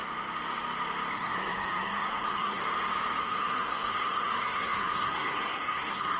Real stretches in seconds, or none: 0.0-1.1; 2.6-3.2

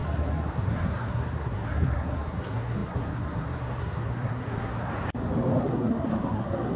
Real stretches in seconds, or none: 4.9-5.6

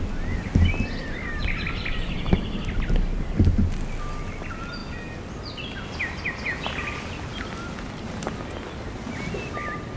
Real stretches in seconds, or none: 0.0-10.0

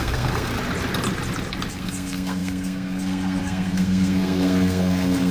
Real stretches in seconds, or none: 0.5-1.7

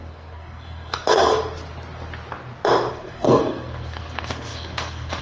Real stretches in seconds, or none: 1.3-2.9

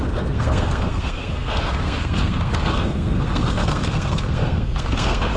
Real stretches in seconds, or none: none

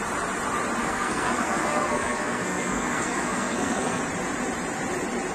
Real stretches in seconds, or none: 0.0-0.8; 4.0-5.3